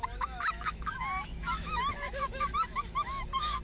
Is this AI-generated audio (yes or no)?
yes